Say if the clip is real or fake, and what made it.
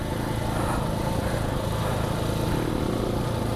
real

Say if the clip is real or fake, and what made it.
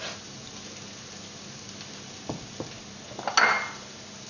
real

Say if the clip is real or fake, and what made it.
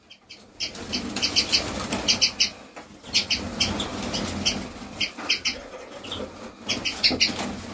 real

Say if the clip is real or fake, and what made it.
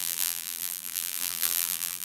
fake, vocoder, BigVGAN v2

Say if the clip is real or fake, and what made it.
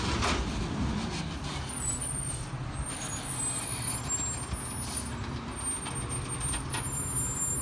real